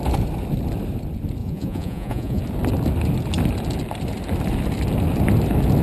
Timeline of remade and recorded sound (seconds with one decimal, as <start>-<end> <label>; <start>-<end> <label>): 0.0-1.4 recorded; 1.4-2.4 remade; 2.4-5.8 recorded